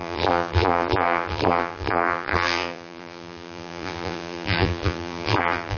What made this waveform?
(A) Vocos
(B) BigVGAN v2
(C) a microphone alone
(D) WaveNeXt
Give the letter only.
B